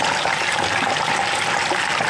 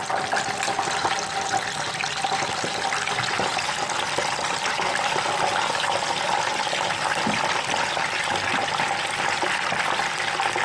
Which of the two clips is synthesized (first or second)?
first